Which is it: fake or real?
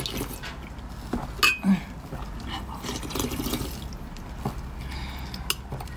real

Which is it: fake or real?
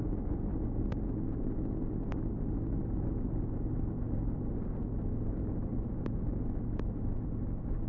real